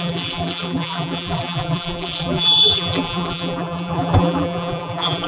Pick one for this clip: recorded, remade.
remade